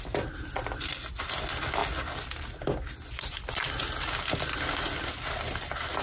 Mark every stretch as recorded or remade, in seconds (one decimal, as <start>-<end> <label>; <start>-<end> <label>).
0.0-6.0 recorded